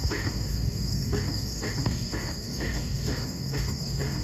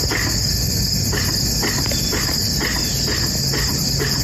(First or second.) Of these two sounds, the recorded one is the second